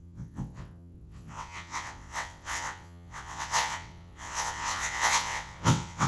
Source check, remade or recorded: remade